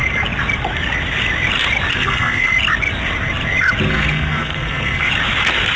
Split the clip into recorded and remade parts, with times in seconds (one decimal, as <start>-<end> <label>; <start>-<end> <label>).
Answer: 0.0-1.9 recorded; 1.9-2.5 remade; 2.5-3.9 recorded; 3.9-5.1 remade; 5.1-5.8 recorded